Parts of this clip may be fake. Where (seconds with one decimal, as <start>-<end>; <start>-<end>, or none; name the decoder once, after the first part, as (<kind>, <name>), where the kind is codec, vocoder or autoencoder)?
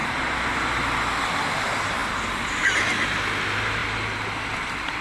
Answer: none